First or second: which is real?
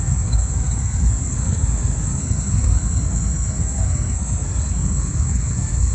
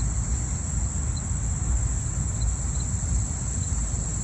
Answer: second